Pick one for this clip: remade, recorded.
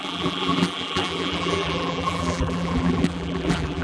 remade